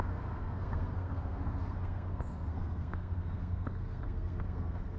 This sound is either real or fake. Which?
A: fake